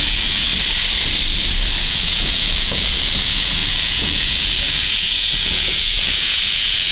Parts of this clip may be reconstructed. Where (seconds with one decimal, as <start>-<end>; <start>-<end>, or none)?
0.0-0.5; 1.8-6.9